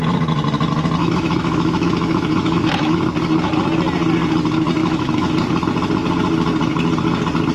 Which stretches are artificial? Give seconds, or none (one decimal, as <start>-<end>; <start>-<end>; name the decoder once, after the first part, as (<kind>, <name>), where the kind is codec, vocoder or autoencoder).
1.0-3.0 (autoencoder, DAC-VAE); 4.8-5.3